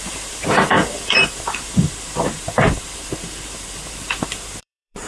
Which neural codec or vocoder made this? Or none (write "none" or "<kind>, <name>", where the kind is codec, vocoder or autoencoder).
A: vocoder, BigVGAN v2